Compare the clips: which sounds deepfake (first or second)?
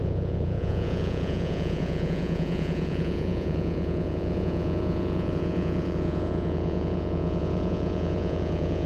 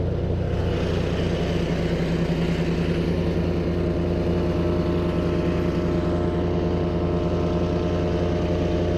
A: first